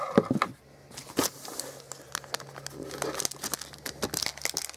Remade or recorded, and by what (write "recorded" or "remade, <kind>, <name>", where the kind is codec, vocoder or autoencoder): recorded